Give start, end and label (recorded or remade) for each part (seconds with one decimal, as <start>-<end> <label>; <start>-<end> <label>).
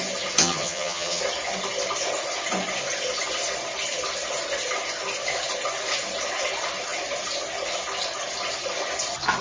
0.0-0.4 recorded; 0.4-1.2 remade; 1.2-9.4 recorded